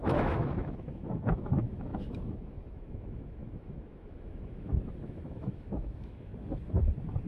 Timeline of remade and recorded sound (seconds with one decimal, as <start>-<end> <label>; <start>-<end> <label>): 0.0-6.3 remade; 6.3-7.3 recorded